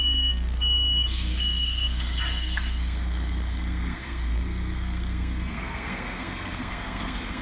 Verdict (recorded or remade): remade